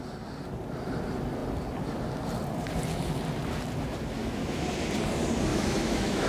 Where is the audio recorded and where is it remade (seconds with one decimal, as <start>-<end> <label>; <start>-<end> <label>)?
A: 0.0-4.2 recorded; 4.2-4.7 remade; 4.7-5.5 recorded; 5.5-6.3 remade